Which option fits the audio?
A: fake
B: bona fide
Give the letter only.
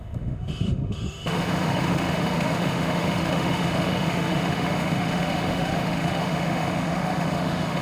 A